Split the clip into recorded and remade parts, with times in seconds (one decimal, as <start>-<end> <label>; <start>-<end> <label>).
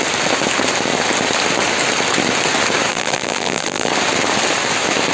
0.0-2.9 recorded; 2.9-3.9 remade; 3.9-5.1 recorded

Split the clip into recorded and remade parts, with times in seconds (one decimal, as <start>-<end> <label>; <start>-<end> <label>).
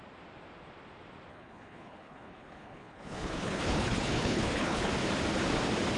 0.0-1.3 recorded; 1.3-4.9 remade; 4.9-6.0 recorded